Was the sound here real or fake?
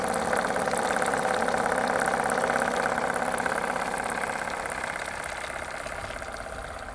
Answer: real